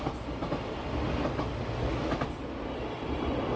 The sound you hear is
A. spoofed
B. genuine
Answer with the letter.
B